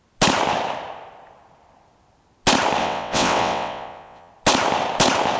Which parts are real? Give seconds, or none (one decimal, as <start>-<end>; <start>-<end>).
0.0-2.8; 4.3-5.4